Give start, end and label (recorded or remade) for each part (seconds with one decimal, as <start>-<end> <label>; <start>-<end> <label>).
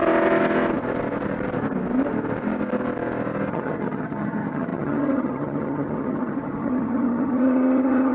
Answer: 0.0-3.5 recorded; 3.5-8.1 remade